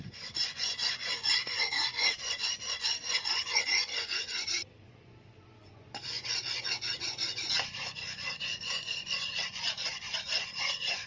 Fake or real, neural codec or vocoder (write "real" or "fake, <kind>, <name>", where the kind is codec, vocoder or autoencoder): fake, vocoder, Vocos